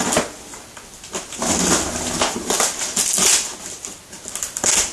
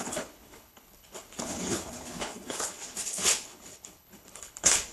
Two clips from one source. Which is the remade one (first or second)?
second